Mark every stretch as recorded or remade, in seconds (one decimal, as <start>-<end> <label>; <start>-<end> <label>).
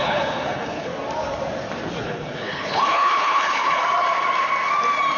0.0-0.9 remade; 0.9-2.0 recorded; 2.0-3.8 remade; 3.8-5.2 recorded